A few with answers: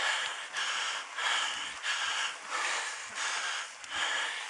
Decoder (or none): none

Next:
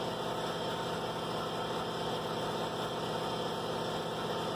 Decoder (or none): none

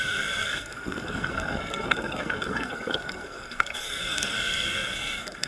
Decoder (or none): codec, SNAC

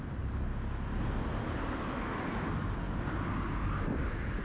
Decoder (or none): none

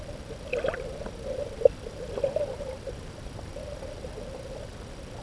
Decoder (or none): none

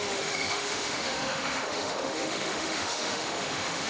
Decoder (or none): autoencoder, DAC-VAE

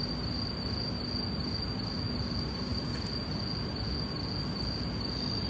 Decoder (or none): none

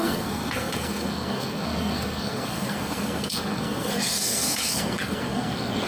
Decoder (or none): codec, SNAC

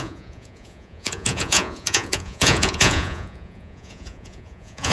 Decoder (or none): vocoder, Vocos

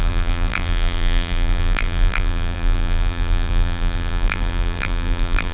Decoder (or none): vocoder, BigVGAN v2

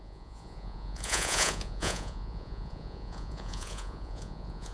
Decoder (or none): vocoder, Vocos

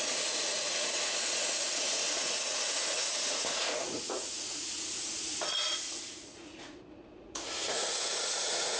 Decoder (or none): vocoder, Vocos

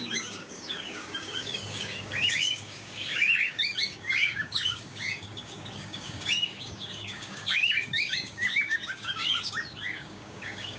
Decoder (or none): codec, DAC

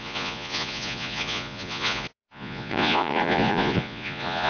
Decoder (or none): vocoder, Vocos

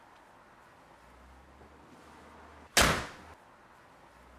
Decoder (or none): none